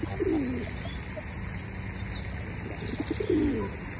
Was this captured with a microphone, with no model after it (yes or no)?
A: yes